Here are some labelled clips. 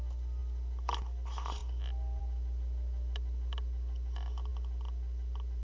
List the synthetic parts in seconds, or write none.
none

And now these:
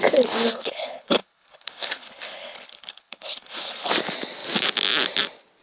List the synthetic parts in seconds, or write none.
0.5-3.9 (codec, HILCodec)

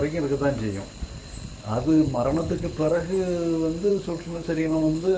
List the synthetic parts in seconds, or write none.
1.6-3.0 (codec, HILCodec); 3.9-5.2

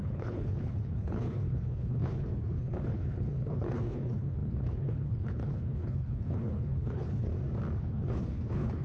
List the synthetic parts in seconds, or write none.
0.0-7.3 (codec, HILCodec); 7.8-8.8

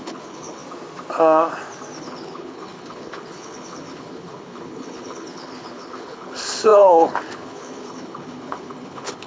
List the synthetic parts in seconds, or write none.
0.0-0.6 (codec, HILCodec); 2.0-9.3

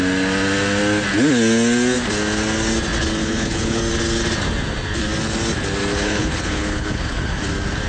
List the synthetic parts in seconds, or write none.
3.2-3.8 (codec, HILCodec); 5.9-7.4